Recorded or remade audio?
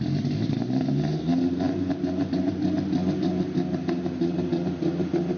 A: recorded